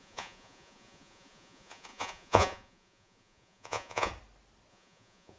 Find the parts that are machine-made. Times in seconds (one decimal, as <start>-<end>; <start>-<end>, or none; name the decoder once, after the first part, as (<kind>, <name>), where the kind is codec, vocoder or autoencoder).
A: 0.0-4.1 (vocoder, Vocos); 4.7-5.4